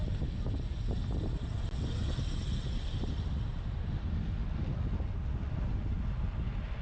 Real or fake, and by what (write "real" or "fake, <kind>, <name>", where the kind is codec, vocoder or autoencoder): real